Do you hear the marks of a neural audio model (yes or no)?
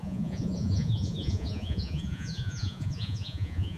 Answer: yes